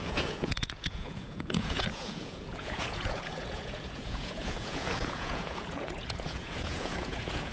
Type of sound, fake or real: fake